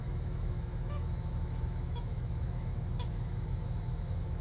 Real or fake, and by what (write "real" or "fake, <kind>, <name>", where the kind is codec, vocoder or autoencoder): fake, autoencoder, DAC-VAE